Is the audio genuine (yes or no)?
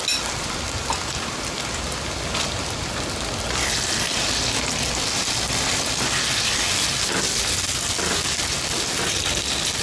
yes